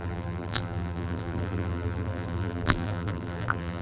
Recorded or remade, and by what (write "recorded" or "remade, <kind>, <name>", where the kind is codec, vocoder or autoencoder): remade, vocoder, BigVGAN v2